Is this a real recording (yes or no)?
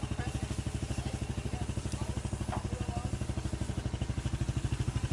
yes